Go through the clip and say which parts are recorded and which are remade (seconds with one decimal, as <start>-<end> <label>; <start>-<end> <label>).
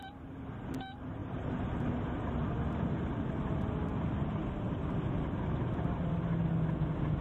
0.0-3.9 recorded; 3.9-4.8 remade; 4.8-7.2 recorded